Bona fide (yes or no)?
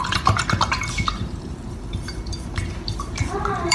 no